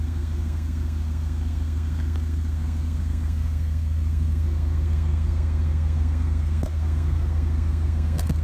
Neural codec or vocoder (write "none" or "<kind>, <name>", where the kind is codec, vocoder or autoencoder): codec, SNAC